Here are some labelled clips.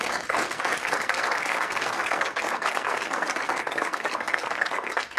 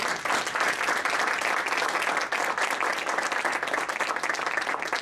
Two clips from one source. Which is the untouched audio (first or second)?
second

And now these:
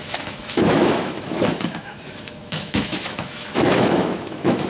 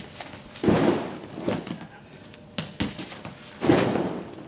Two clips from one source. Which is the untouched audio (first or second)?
second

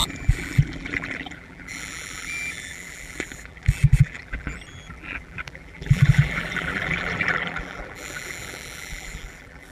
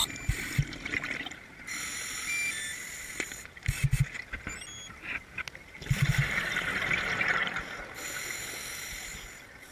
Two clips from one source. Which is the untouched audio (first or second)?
second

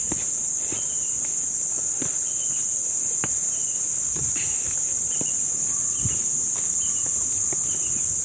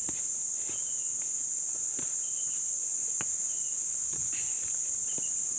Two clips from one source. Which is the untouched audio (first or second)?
first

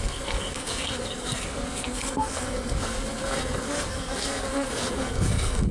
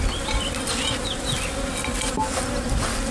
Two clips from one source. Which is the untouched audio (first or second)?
second